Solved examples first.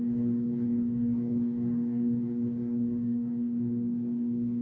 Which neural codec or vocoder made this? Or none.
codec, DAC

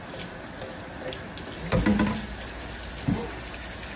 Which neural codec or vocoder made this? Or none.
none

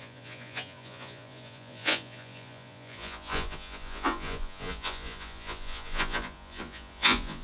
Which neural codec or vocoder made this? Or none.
vocoder, Vocos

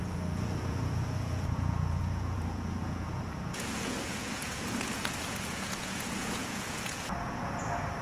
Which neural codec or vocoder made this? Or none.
vocoder, Vocos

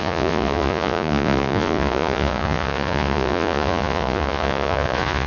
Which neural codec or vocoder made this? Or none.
vocoder, Vocos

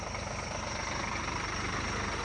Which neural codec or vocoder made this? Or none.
none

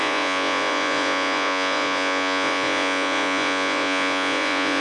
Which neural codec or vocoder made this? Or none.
vocoder, Vocos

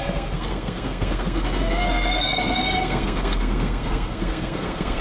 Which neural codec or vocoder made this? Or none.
codec, SNAC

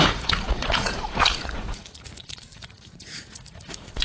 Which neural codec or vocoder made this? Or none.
vocoder, Vocos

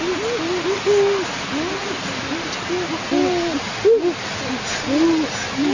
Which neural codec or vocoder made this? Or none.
none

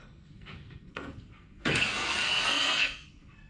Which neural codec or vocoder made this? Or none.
codec, SNAC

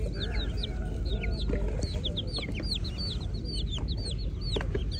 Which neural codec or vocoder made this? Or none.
none